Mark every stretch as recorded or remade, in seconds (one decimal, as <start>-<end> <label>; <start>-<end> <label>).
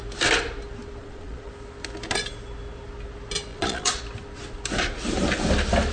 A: 0.0-1.0 recorded; 1.0-1.5 remade; 1.5-3.5 recorded; 3.5-4.0 remade; 4.0-5.9 recorded